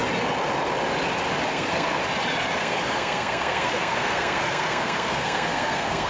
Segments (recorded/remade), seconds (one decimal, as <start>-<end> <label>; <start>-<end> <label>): 0.0-1.5 recorded; 1.5-2.0 remade; 2.0-2.6 recorded; 2.6-6.1 remade